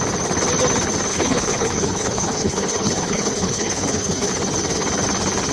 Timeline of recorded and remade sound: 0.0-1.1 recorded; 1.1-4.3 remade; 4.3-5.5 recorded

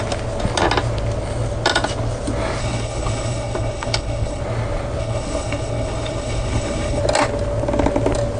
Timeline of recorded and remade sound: 0.0-2.6 recorded; 2.6-4.4 remade; 4.4-5.0 recorded; 5.0-7.0 remade; 7.0-8.4 recorded

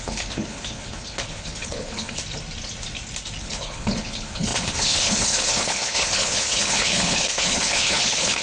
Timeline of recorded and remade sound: 0.0-2.2 remade; 2.2-3.4 recorded; 3.4-8.4 remade

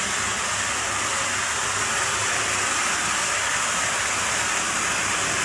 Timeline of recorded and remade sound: 0.0-5.4 recorded

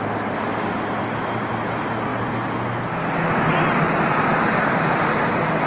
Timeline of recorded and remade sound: 0.0-5.7 recorded

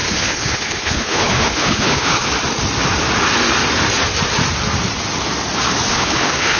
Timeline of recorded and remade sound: 0.0-2.3 remade; 2.3-5.9 recorded; 5.9-6.6 remade

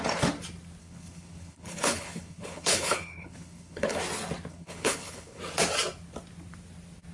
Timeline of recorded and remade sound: 0.0-0.8 recorded; 0.8-4.0 remade; 4.0-4.5 recorded; 4.5-5.4 remade; 5.4-7.1 recorded